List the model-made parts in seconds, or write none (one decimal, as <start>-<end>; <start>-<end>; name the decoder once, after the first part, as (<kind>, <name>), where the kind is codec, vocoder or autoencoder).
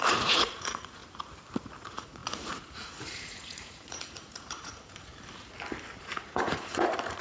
0.0-1.0 (vocoder, Vocos); 1.8-5.1; 6.0-7.2